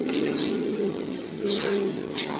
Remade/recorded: remade